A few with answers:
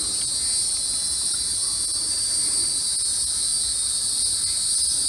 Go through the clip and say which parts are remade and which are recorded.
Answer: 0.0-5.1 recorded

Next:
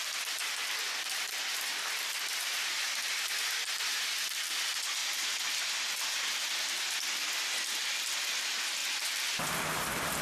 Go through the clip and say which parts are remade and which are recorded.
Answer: 0.0-8.8 recorded; 8.8-9.6 remade; 9.6-10.2 recorded

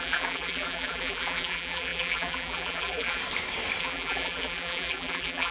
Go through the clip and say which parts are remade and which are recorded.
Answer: 0.0-3.2 remade; 3.2-3.8 recorded; 3.8-5.5 remade

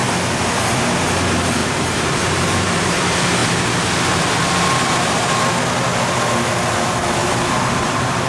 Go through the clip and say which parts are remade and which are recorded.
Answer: 0.0-1.6 recorded; 1.6-3.0 remade; 3.0-7.2 recorded; 7.2-8.3 remade

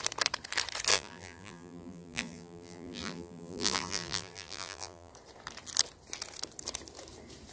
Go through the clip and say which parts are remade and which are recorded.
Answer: 0.0-0.9 recorded; 0.9-5.1 remade; 5.1-7.5 recorded